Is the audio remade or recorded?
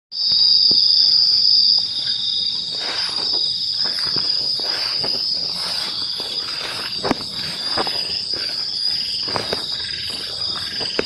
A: recorded